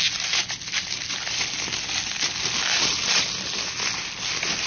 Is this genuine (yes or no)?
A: yes